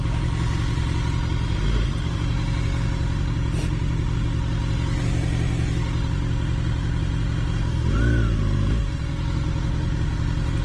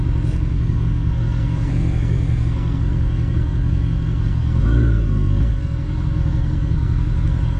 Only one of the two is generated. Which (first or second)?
second